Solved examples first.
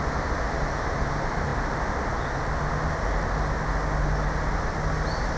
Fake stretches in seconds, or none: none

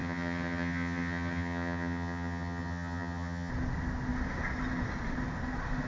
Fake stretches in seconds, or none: 0.0-3.5 (vocoder, HiFi-GAN)